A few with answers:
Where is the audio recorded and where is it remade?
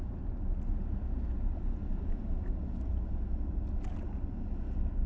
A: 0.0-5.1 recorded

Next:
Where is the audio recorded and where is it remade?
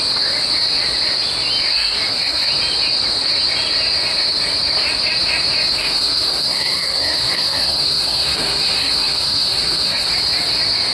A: 0.0-1.7 recorded; 1.7-2.5 remade; 2.5-5.8 recorded; 5.8-10.1 remade; 10.1-10.9 recorded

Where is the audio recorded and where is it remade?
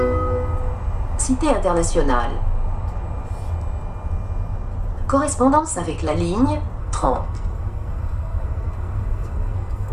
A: 0.0-6.8 recorded; 6.8-9.9 remade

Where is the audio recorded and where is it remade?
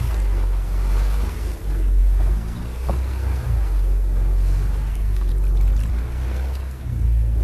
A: 0.0-5.3 remade; 5.3-5.9 recorded; 5.9-7.4 remade